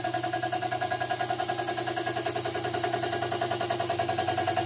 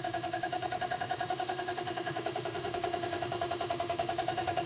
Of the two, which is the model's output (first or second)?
second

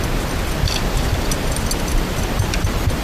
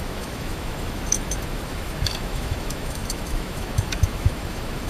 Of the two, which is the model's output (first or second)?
second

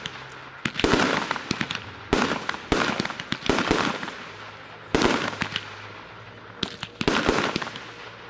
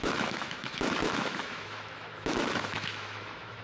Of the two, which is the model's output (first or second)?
second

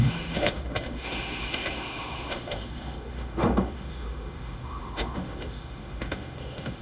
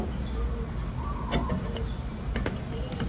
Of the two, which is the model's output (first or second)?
first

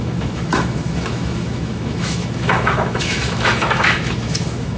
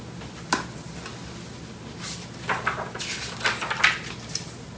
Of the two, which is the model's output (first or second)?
first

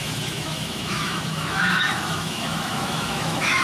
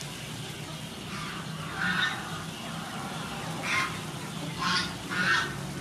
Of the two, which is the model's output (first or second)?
first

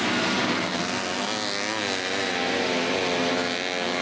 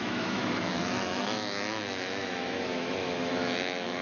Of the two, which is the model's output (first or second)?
second